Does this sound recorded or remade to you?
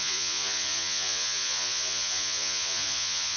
remade